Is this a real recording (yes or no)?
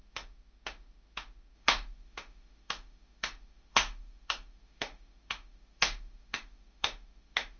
no